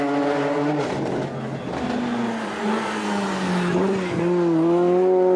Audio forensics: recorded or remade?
recorded